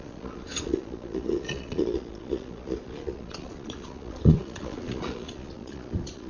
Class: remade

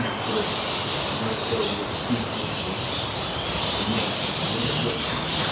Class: remade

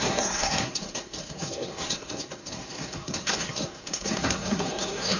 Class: remade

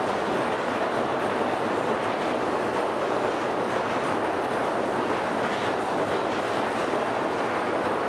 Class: recorded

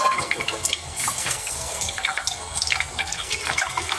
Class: remade